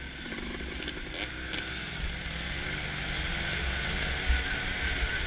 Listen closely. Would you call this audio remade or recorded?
recorded